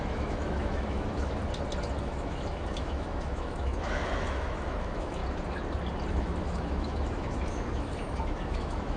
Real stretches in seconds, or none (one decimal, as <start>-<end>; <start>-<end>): 1.4-2.0; 5.2-6.1